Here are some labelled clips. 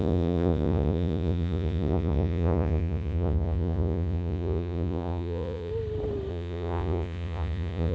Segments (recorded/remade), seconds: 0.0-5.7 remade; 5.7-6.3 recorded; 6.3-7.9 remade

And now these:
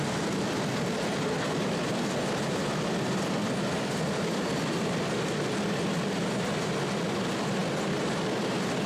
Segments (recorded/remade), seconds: 0.0-8.9 recorded